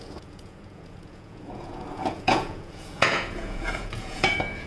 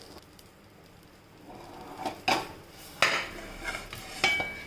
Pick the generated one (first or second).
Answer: first